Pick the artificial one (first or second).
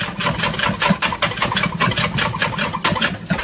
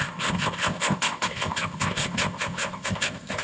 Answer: second